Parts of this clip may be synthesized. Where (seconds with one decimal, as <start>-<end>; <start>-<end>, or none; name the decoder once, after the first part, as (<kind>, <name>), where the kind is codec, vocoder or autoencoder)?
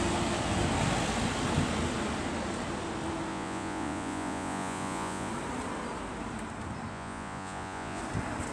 3.3-5.3 (vocoder, Vocos); 6.9-8.0